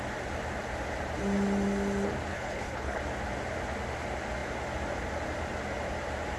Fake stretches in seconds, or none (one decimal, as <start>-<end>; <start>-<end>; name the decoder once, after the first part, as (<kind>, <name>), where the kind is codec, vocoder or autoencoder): 2.3-3.0 (codec, HILCodec)